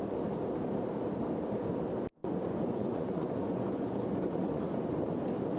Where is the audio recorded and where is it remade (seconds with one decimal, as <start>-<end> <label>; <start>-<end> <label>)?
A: 0.0-2.2 recorded; 2.2-4.8 remade; 4.8-5.6 recorded